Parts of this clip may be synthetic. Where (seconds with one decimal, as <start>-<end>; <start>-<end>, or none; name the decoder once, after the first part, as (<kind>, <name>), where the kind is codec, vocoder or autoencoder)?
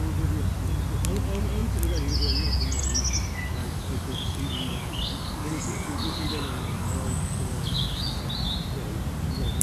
3.6-8.2 (codec, DAC)